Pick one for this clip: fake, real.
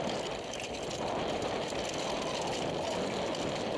real